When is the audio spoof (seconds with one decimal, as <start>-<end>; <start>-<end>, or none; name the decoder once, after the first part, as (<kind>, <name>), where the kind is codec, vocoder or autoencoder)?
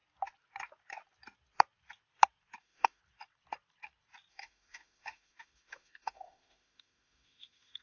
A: 2.6-3.0 (autoencoder, DAC-VAE); 4.3-7.8